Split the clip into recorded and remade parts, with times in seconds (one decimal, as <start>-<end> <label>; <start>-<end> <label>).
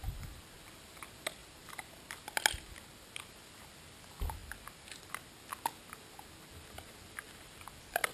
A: 0.0-8.1 recorded